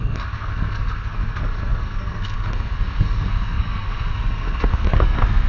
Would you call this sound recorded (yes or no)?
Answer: no